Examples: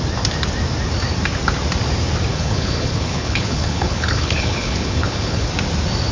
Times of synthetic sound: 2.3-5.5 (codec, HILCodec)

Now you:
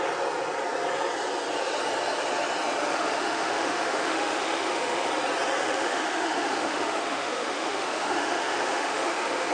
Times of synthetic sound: 2.9-5.1 (autoencoder, DAC-VAE); 5.6-9.5

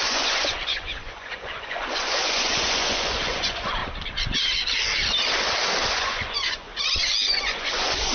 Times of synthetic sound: 0.0-3.8 (vocoder, Vocos); 5.9-6.7; 7.3-8.1

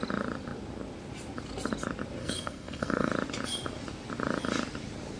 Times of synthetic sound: 2.2-3.1 (codec, SNAC)

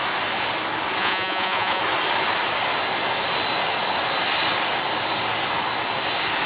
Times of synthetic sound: 1.0-1.8 (vocoder, Vocos)

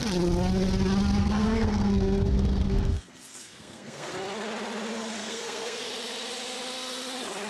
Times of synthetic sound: 1.2-4.1 (codec, SNAC); 5.2-5.9

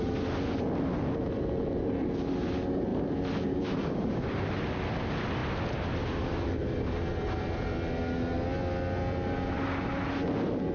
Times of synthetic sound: 2.9-4.7 (vocoder, BigVGAN v2)